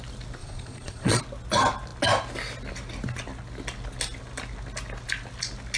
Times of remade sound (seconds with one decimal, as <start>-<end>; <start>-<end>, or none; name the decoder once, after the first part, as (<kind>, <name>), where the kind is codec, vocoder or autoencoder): 0.4-1.2 (vocoder, Vocos)